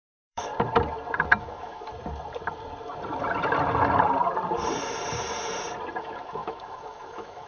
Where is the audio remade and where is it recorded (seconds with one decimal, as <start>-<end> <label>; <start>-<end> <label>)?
0.0-0.5 remade; 0.5-1.4 recorded; 1.4-1.9 remade; 1.9-6.0 recorded; 6.0-7.5 remade